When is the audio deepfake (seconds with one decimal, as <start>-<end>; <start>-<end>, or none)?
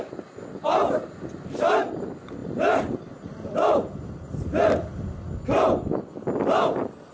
none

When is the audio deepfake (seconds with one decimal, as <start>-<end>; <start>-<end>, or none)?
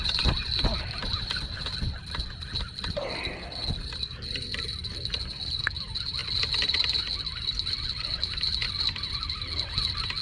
none